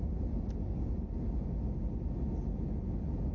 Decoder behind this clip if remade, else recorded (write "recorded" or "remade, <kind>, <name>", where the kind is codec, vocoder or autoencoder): recorded